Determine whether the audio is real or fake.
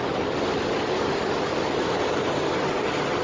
real